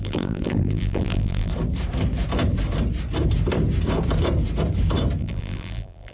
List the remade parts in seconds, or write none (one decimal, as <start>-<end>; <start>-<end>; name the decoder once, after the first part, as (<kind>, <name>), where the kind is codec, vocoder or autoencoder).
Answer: 0.0-1.5 (vocoder, BigVGAN v2); 5.2-6.1